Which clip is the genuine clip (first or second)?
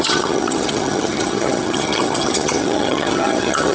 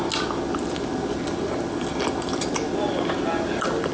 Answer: second